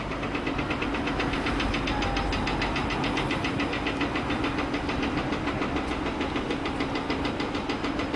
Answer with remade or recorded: recorded